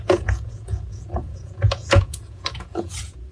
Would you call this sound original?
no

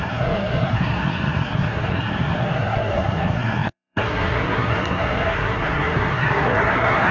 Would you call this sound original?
no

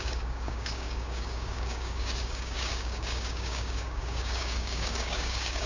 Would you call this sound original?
no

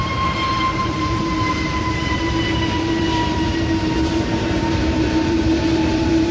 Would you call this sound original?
no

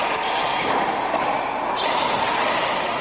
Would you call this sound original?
yes